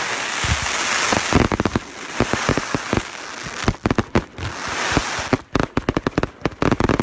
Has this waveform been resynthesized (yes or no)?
no